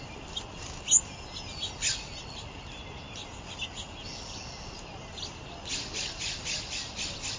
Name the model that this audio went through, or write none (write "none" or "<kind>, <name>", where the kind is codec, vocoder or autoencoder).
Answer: none